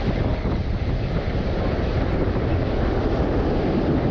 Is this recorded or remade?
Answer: recorded